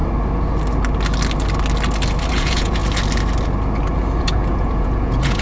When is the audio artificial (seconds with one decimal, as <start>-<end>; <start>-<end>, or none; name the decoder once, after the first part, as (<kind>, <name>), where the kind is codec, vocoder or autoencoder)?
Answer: 2.3-2.8 (vocoder, Vocos); 4.2-5.4